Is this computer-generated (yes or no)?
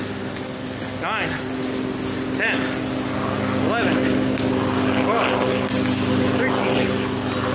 no